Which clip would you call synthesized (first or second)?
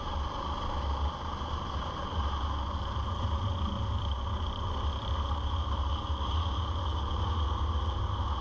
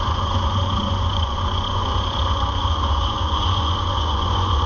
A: second